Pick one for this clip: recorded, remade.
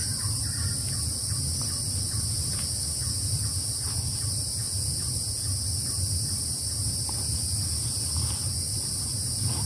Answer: recorded